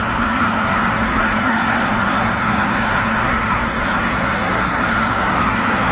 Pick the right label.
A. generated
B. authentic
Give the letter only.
A